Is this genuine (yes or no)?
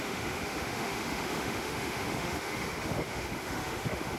no